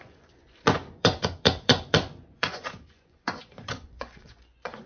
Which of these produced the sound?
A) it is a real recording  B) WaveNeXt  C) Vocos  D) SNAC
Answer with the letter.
C